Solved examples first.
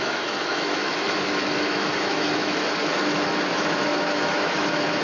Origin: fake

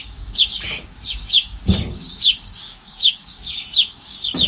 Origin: fake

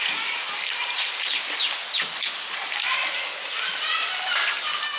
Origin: real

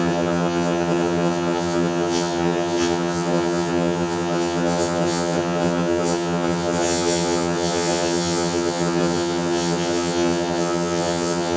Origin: fake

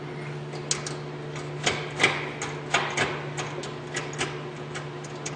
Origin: real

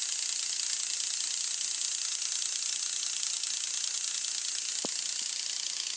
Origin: real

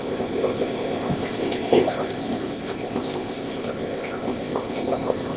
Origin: fake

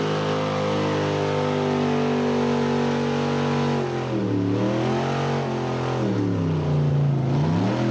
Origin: real